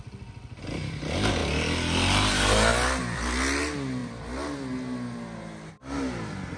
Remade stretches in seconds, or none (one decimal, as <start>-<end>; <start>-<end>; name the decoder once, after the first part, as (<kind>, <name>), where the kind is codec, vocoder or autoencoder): none